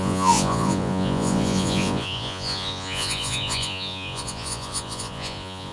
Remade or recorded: remade